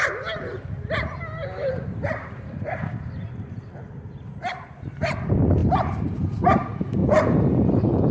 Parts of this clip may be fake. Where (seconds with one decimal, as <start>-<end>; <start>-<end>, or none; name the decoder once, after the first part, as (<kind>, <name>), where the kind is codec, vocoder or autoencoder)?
1.4-4.9 (vocoder, BigVGAN v2); 5.6-6.3